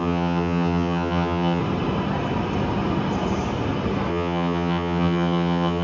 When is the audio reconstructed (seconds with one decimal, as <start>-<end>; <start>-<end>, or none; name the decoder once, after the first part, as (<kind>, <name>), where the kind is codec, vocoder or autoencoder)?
0.0-1.6 (vocoder, HiFi-GAN); 4.1-5.8